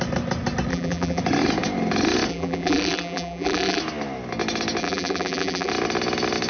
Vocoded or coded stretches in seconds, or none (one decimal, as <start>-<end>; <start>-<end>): 0.7-1.2; 2.3-3.8; 4.8-5.7

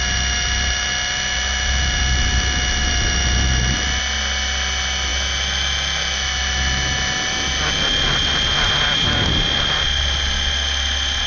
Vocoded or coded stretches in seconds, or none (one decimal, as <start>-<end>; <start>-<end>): none

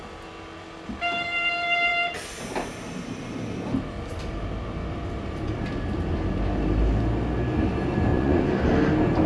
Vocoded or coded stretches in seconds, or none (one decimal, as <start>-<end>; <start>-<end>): 8.1-8.6

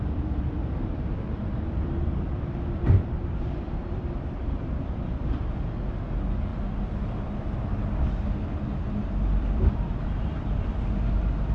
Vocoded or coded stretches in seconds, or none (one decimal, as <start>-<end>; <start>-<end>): 0.6-5.4; 9.0-9.7